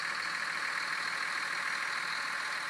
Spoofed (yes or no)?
no